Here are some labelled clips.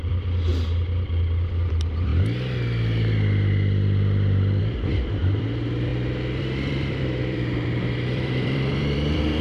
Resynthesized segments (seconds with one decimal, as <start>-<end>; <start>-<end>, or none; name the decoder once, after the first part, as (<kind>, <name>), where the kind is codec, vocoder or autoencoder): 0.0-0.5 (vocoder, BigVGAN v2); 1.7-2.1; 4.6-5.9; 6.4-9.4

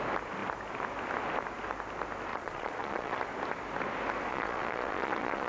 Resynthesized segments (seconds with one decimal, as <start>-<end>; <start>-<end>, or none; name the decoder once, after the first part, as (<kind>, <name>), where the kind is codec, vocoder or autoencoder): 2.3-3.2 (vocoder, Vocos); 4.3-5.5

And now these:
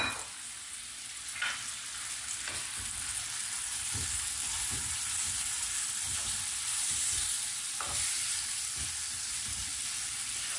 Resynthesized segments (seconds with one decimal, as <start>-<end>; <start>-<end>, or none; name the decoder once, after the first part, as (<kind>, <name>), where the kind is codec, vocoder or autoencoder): none

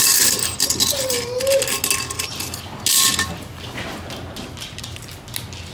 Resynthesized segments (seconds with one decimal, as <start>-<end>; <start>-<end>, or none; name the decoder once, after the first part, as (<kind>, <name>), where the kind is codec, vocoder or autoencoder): none